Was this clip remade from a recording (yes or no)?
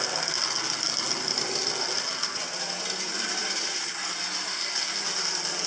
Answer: no